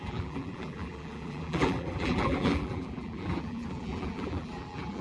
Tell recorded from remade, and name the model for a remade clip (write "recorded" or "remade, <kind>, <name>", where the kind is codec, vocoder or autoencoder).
remade, vocoder, BigVGAN v2